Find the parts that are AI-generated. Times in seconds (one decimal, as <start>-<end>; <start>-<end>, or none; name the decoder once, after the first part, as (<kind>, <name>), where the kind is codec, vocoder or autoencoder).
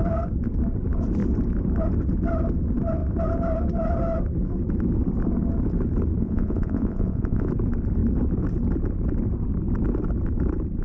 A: 6.2-7.5 (vocoder, Vocos)